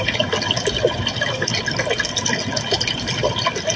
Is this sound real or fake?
real